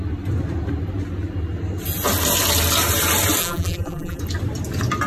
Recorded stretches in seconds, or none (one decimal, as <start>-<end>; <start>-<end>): 0.0-3.4; 4.2-5.1